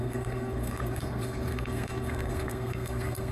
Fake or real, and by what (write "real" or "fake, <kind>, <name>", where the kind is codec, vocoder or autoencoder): fake, codec, SNAC